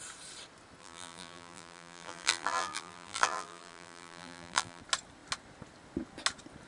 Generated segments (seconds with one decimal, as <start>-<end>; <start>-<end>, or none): 0.8-4.8